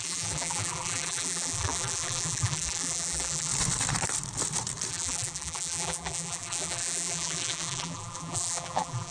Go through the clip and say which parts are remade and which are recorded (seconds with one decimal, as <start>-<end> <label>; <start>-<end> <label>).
0.0-3.5 remade; 3.5-4.9 recorded; 4.9-9.1 remade